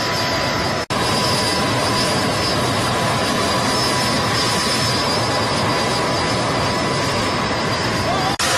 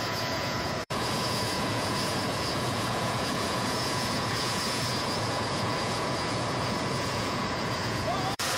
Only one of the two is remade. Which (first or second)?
second